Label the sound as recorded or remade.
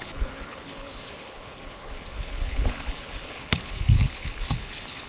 remade